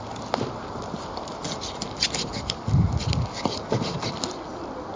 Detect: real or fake real